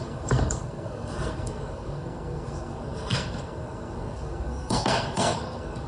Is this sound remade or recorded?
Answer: remade